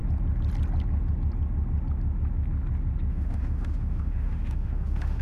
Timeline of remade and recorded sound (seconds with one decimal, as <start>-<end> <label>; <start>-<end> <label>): 0.0-3.1 recorded; 3.1-5.2 remade